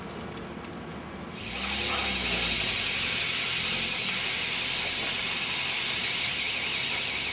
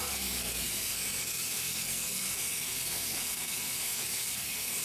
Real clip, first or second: first